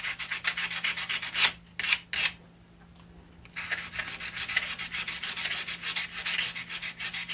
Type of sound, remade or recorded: recorded